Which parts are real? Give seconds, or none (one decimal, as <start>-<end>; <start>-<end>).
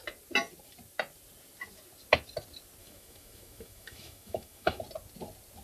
0.0-2.8; 4.8-5.6